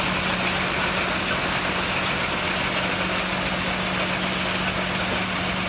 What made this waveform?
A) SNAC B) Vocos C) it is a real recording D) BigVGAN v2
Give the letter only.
C